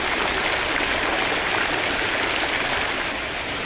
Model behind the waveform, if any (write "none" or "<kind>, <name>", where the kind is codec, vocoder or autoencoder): none